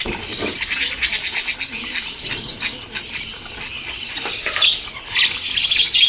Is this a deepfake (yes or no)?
no